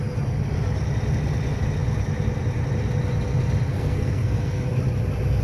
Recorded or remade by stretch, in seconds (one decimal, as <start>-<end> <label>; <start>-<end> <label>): 0.0-3.7 recorded; 3.7-4.7 remade; 4.7-5.4 recorded